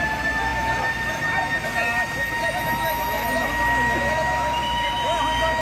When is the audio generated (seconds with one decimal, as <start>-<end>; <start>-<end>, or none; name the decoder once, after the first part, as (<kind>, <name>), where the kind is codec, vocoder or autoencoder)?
none